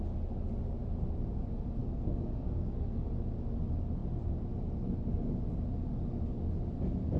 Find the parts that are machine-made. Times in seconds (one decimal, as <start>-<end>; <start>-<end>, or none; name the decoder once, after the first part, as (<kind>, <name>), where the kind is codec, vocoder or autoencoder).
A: 1.8-3.0 (codec, SNAC)